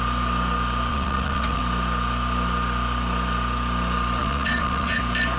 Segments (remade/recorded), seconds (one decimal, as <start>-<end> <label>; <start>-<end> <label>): 0.0-0.9 recorded; 0.9-1.6 remade; 1.6-4.2 recorded; 4.2-5.0 remade; 5.0-5.4 recorded